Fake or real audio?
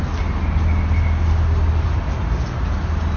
real